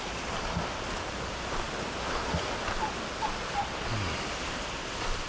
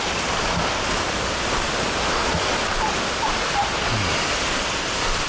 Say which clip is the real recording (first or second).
first